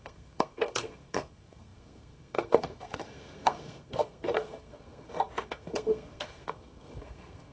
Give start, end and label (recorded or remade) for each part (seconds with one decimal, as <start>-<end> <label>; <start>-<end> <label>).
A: 0.0-7.5 remade